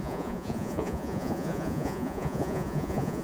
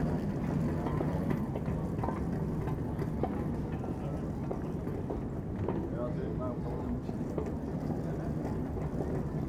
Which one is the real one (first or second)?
second